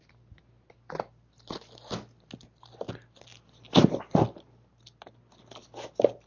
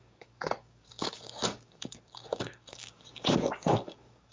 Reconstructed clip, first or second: second